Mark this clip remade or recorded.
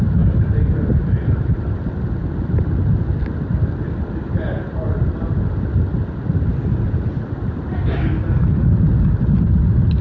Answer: recorded